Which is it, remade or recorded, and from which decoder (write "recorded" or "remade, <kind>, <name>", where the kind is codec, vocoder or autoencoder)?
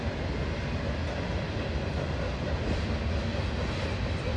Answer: recorded